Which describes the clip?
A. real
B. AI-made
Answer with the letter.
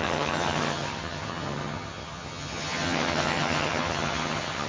B